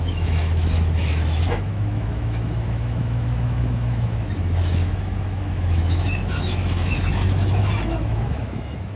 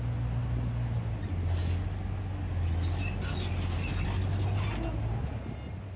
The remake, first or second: first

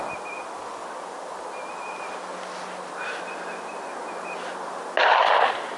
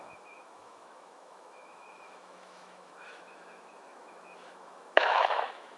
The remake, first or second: second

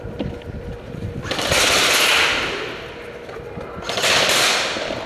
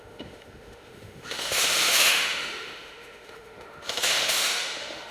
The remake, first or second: second